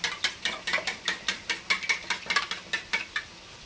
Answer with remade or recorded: recorded